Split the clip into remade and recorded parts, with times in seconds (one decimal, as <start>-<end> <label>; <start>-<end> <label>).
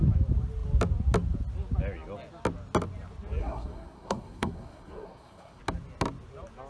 0.0-3.4 recorded; 3.4-5.6 remade; 5.6-6.7 recorded